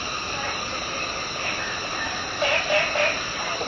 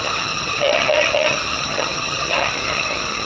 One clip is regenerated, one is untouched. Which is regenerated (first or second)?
second